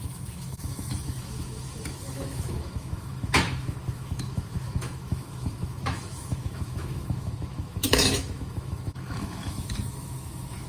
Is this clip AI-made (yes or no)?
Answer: yes